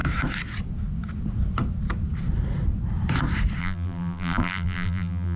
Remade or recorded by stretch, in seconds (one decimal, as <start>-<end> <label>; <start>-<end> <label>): 0.0-3.6 recorded; 3.6-5.4 remade